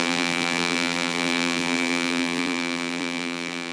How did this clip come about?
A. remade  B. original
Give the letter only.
A